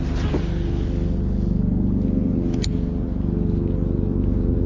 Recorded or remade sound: recorded